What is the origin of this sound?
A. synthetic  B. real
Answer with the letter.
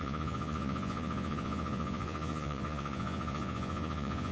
A